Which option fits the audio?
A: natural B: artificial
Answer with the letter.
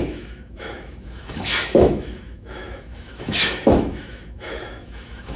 B